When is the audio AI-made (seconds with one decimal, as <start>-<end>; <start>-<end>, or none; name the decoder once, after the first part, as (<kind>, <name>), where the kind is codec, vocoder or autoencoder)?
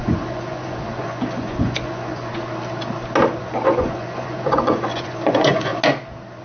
0.0-2.3 (vocoder, Vocos); 3.4-5.7